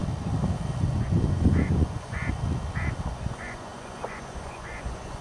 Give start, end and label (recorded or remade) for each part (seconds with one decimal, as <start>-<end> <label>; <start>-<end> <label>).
0.0-0.8 recorded; 0.8-2.2 remade; 2.2-3.1 recorded; 3.1-5.2 remade